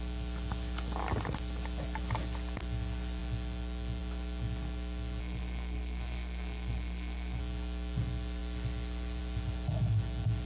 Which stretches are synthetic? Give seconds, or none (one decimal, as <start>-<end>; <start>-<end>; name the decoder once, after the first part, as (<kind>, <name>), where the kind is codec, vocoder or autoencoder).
5.2-7.4 (codec, SNAC)